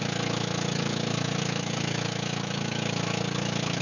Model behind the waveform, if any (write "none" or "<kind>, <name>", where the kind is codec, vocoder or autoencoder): autoencoder, DAC-VAE